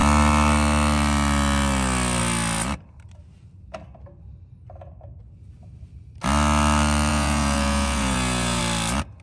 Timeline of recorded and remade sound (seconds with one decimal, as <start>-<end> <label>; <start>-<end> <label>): 0.0-7.1 recorded; 7.1-8.6 remade; 8.6-9.2 recorded